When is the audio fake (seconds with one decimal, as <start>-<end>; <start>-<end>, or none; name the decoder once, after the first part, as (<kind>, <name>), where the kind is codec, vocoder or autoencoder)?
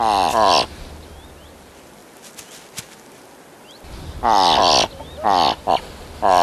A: none